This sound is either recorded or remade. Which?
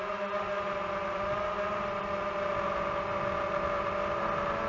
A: recorded